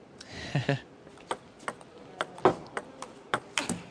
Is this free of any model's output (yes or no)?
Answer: yes